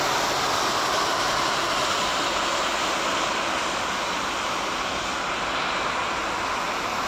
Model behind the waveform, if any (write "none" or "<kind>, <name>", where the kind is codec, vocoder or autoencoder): none